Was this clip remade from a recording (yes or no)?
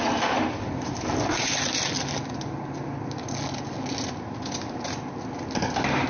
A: no